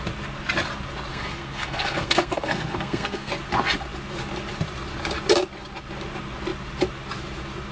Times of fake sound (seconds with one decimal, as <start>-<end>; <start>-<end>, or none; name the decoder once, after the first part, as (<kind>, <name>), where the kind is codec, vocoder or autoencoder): 1.1-3.3 (codec, SNAC)